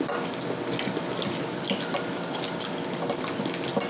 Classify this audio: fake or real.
real